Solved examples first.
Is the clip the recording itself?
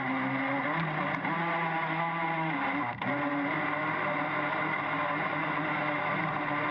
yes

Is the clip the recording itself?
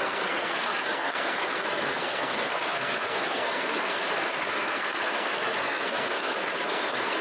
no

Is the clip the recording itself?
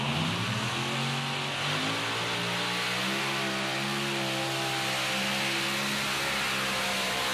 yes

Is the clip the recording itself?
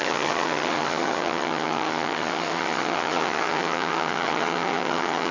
no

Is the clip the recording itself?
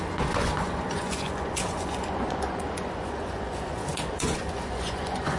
no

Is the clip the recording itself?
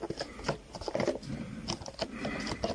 yes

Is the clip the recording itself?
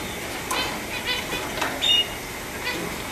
yes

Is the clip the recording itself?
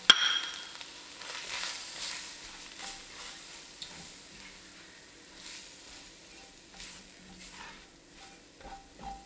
yes